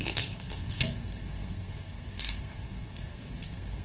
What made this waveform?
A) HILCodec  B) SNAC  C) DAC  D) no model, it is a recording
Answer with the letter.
B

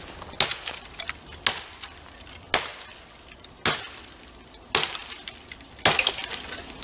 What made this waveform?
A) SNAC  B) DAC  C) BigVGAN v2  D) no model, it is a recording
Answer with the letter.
D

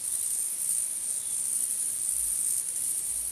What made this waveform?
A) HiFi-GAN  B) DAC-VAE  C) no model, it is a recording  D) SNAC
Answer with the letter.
C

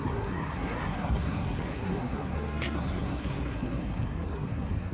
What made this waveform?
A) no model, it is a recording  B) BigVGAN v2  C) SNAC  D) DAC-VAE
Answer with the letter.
C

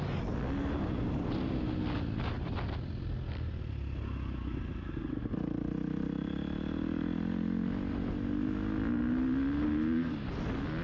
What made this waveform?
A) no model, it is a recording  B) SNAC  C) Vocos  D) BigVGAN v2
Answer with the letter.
A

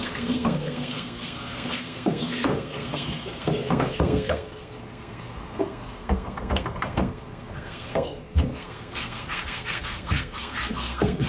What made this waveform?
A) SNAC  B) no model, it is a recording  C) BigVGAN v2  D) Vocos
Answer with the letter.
A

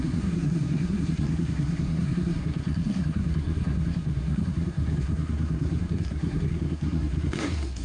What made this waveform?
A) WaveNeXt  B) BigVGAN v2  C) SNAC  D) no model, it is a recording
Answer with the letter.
C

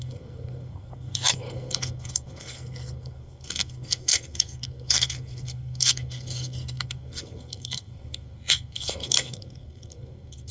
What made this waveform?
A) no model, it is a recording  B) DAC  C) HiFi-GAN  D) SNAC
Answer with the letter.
D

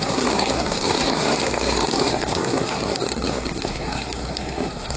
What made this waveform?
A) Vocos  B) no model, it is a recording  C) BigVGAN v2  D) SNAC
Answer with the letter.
D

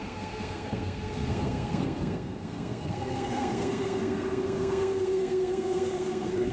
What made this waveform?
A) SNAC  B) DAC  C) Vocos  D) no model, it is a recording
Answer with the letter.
A